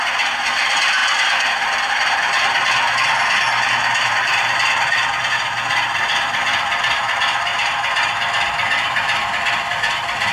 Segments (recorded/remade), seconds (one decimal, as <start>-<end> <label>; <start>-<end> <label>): 0.0-10.3 remade